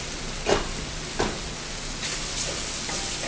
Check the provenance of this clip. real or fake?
real